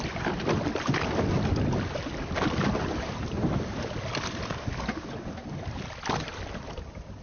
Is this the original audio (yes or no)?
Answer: yes